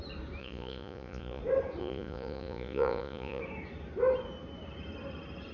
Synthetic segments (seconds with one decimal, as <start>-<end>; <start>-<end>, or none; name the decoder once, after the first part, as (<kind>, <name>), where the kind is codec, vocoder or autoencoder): 0.4-1.4 (vocoder, Vocos); 1.8-3.4